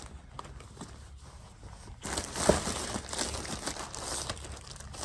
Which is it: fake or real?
real